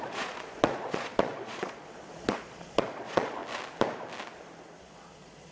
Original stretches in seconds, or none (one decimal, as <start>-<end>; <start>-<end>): 3.4-4.8